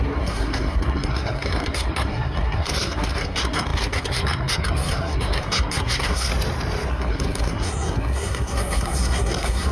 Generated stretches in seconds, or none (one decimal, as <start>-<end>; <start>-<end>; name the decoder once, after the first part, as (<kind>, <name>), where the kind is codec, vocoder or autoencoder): 0.0-6.3 (codec, SNAC); 6.9-9.7

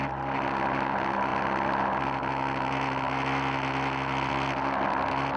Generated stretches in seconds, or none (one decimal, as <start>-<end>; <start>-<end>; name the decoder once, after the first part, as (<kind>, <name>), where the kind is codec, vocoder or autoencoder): none

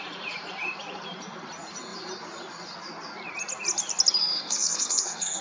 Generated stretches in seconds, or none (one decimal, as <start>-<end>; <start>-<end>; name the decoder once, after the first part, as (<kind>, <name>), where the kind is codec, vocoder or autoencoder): 4.2-5.4 (codec, SNAC)

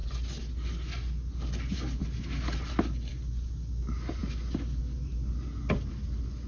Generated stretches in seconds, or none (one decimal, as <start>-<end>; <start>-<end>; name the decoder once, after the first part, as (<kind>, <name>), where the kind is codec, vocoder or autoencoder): none

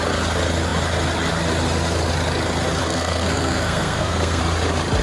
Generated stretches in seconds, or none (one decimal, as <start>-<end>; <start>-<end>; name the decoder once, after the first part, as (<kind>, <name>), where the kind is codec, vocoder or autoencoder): 2.8-4.4 (codec, SNAC)

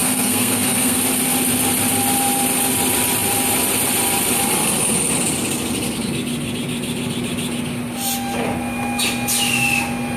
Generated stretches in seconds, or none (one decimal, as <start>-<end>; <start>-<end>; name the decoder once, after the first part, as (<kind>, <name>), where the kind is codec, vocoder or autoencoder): 0.0-1.0 (codec, SNAC)

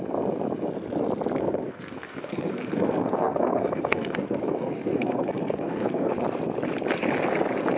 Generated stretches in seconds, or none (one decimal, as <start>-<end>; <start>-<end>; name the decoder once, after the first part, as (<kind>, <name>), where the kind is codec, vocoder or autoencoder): 1.4-6.1 (codec, SNAC)

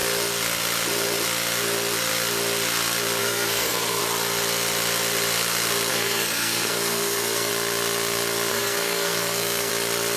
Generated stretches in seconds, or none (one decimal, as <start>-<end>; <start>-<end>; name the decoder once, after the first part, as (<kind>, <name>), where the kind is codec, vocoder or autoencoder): 3.2-4.0 (codec, SNAC); 5.9-7.5; 8.5-9.7